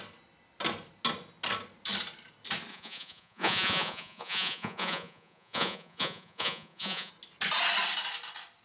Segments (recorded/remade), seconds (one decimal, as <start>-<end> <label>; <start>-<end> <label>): 0.0-2.7 recorded; 2.7-7.1 remade; 7.1-8.6 recorded